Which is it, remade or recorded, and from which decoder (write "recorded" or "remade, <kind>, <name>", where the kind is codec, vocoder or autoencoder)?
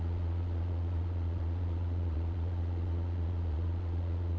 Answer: remade, vocoder, Vocos